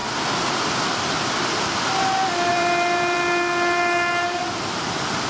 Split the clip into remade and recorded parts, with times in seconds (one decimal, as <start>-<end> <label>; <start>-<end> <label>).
0.0-2.5 recorded; 2.5-5.3 remade